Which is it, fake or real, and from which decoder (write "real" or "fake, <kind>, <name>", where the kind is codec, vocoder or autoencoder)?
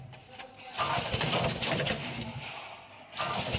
real